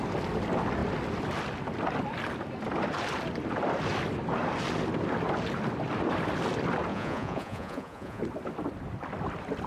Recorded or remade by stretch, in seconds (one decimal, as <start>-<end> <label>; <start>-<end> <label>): 0.0-6.9 recorded; 6.9-8.2 remade; 8.2-9.7 recorded